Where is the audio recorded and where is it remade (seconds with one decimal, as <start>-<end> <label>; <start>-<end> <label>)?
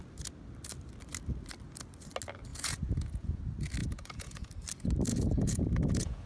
0.0-2.5 recorded; 2.5-3.4 remade; 3.4-3.8 recorded; 3.8-4.5 remade; 4.5-5.1 recorded; 5.1-6.3 remade